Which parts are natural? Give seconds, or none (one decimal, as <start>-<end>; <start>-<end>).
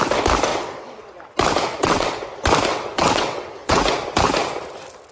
0.0-0.5; 1.1-1.7; 2.3-2.7; 3.8-5.1